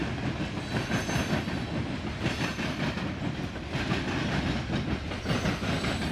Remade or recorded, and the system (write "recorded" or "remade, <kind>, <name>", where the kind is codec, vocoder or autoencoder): recorded